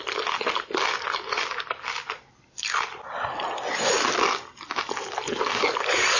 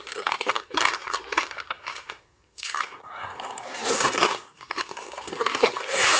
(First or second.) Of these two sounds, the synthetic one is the second